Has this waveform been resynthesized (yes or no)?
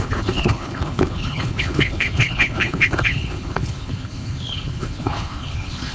yes